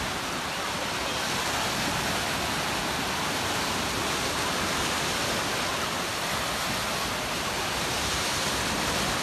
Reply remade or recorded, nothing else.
recorded